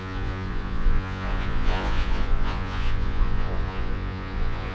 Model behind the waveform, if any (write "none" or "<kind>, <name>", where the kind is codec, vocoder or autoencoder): vocoder, Vocos